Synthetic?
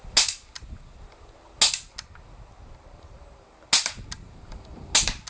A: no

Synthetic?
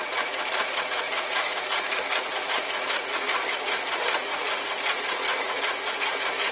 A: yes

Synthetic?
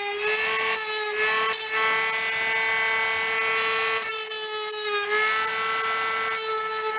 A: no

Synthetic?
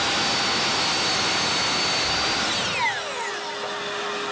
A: no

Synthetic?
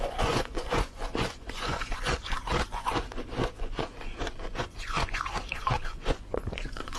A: yes